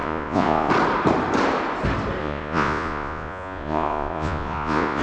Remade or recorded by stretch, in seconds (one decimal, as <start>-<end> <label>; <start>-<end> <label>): 0.0-0.7 remade; 0.7-2.2 recorded; 2.2-5.0 remade